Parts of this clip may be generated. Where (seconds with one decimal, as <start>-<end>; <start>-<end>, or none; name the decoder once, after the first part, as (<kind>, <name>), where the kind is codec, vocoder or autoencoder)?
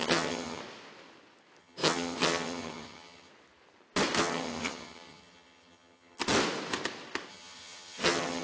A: 0.0-0.6 (vocoder, HiFi-GAN); 1.6-3.3; 4.2-6.2; 7.3-8.4